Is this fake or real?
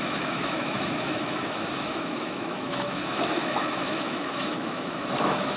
fake